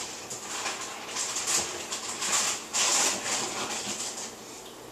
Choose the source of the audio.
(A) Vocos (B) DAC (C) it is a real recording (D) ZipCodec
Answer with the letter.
C